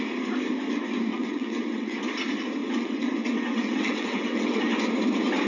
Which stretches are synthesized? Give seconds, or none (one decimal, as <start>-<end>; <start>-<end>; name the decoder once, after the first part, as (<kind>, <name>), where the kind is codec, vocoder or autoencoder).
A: 1.1-2.0 (vocoder, WaveNeXt); 2.6-4.6